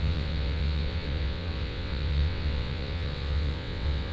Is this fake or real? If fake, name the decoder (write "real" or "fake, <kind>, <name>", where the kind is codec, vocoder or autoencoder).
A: fake, vocoder, WaveNeXt